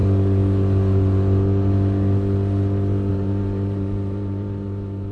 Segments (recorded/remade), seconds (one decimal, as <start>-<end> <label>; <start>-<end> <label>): 0.0-3.1 recorded; 3.1-5.1 remade